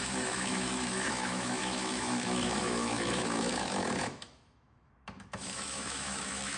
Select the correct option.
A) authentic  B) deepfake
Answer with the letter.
B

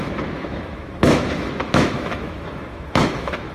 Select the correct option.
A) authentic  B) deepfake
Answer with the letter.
B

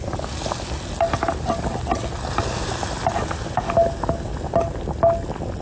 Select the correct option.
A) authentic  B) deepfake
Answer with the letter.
A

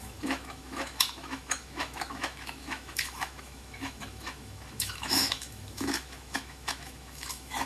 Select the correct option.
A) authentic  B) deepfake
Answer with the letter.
B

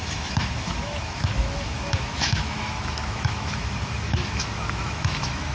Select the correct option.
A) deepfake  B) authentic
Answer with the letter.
A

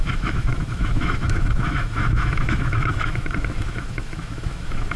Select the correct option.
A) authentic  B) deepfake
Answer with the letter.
B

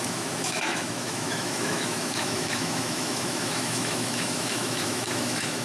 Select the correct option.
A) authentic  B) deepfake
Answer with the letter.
B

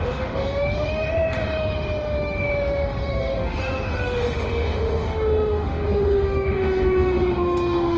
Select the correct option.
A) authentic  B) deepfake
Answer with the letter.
B